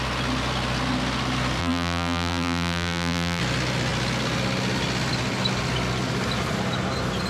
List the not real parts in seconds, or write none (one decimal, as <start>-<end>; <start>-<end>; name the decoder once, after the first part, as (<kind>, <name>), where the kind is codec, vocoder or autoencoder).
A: 1.6-3.4 (vocoder, BigVGAN v2)